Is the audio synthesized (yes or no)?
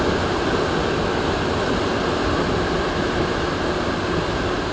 no